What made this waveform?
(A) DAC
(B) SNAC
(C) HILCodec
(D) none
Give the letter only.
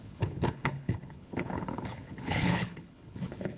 C